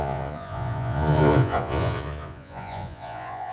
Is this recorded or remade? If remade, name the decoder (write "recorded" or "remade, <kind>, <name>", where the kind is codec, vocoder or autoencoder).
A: remade, vocoder, Vocos